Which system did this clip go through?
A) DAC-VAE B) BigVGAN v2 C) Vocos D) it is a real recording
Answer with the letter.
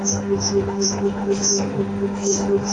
A